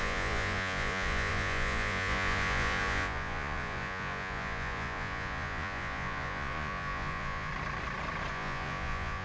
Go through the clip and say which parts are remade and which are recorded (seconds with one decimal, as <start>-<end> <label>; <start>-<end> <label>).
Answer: 0.0-7.5 remade; 7.5-8.3 recorded; 8.3-9.2 remade